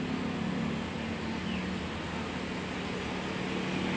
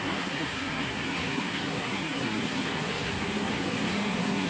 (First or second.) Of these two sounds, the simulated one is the second